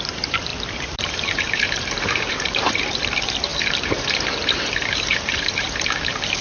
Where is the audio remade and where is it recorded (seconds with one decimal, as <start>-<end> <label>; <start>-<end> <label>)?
0.0-6.4 remade